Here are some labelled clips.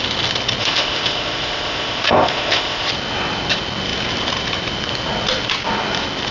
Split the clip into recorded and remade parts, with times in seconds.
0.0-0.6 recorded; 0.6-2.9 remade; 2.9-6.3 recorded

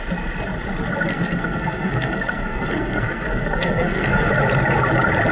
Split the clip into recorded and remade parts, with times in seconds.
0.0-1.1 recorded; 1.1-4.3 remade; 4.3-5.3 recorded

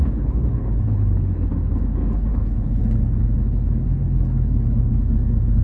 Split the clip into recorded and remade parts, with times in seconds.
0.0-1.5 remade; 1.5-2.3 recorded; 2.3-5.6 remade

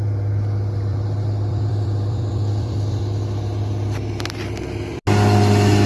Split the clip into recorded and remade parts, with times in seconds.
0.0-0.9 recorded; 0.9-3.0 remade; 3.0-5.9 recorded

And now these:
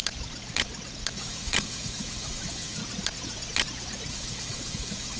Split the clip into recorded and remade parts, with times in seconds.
0.0-1.1 recorded; 1.1-2.8 remade; 2.8-4.1 recorded; 4.1-5.2 remade

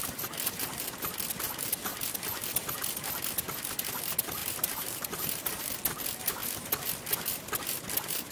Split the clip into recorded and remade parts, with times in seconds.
0.0-4.4 recorded; 4.4-5.6 remade; 5.6-8.3 recorded

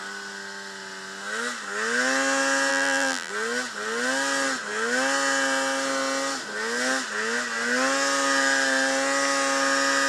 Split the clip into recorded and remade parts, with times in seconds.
0.0-2.7 recorded; 2.7-3.3 remade; 3.3-10.1 recorded

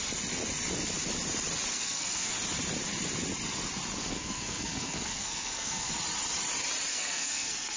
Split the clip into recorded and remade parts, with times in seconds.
0.0-1.7 recorded; 1.7-2.3 remade; 2.3-4.0 recorded; 4.0-5.9 remade; 5.9-6.9 recorded; 6.9-7.8 remade